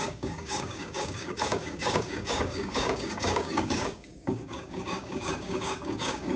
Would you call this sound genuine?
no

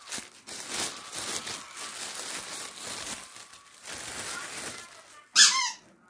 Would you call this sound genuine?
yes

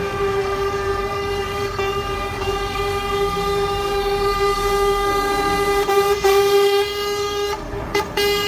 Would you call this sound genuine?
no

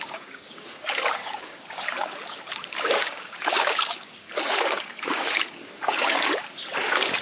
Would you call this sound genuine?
no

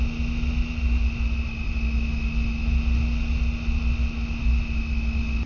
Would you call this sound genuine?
yes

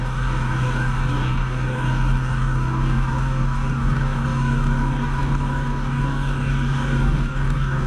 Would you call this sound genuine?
no